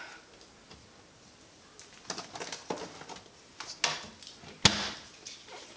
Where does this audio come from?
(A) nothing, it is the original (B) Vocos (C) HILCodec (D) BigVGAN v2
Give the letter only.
A